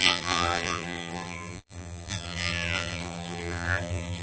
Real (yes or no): no